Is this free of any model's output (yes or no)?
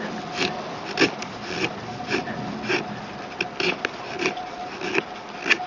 yes